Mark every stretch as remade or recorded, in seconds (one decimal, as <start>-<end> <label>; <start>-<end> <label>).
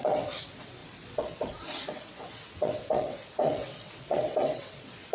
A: 0.0-5.1 remade